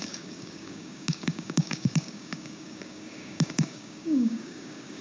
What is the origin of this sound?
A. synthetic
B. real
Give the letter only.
A